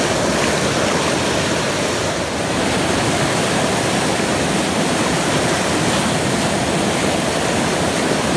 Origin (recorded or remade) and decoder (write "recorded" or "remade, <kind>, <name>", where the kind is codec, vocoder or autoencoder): recorded